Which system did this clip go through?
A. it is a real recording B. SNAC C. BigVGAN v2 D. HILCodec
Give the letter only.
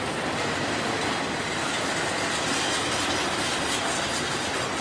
A